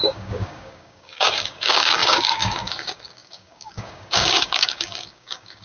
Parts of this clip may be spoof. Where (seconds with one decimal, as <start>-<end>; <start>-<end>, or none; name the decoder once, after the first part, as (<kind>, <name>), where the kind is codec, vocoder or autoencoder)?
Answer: 0.0-5.6 (codec, DAC)